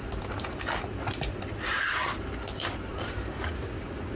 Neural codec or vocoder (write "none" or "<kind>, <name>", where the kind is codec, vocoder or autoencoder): none